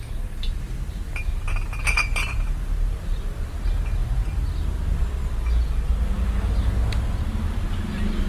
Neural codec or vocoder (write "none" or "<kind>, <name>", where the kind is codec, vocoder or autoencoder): none